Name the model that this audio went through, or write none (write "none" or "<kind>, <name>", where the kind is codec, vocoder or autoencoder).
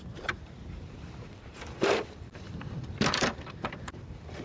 vocoder, BigVGAN v2